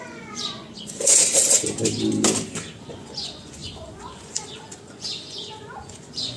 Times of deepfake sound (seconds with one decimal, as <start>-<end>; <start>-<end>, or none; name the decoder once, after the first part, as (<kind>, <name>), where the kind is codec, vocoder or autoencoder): 0.0-1.2 (vocoder, Vocos); 2.8-6.4